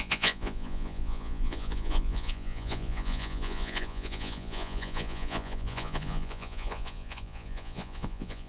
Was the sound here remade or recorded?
remade